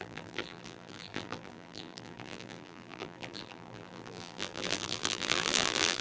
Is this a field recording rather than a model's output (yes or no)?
no